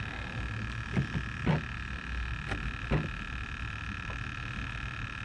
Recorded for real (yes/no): yes